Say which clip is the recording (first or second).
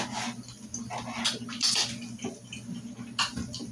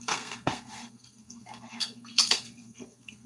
first